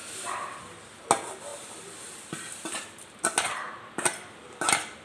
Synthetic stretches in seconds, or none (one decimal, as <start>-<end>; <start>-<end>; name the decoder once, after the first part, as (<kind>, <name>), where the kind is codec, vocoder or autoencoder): none